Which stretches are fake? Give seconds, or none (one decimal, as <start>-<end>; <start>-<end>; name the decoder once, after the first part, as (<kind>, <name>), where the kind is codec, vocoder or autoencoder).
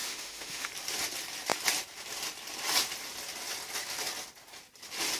0.0-0.7 (autoencoder, DAC-VAE)